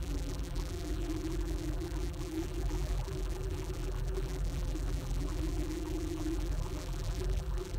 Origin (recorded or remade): remade